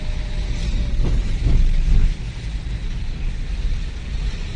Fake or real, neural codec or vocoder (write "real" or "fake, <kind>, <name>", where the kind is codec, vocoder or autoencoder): real